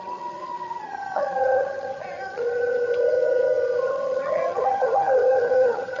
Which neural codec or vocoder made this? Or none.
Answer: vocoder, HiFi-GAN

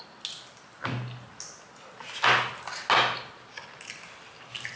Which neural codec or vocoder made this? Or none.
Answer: none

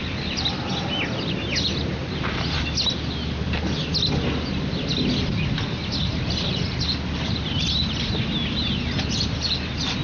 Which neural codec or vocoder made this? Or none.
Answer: none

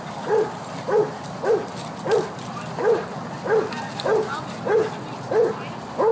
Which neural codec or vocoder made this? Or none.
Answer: none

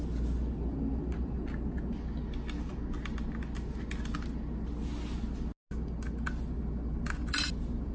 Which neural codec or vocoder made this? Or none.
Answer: none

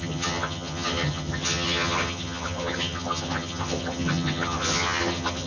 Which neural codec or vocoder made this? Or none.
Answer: vocoder, HiFi-GAN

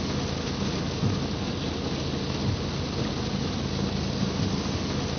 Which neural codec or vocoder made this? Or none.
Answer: none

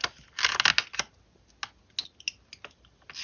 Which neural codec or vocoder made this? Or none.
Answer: none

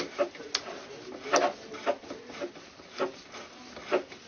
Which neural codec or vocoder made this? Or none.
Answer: none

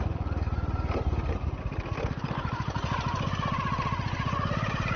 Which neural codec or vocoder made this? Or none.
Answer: none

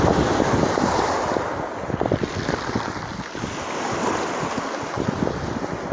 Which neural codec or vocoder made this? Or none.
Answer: none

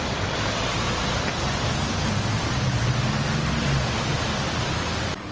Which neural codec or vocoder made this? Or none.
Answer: none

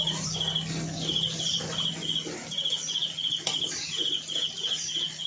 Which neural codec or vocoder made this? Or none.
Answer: none